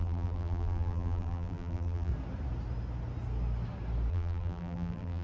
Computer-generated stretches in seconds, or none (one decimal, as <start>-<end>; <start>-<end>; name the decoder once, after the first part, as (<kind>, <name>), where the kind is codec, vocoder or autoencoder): 0.0-2.1 (vocoder, BigVGAN v2); 4.1-5.2